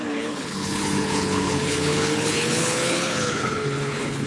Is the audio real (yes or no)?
no